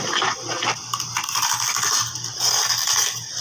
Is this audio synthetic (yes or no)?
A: yes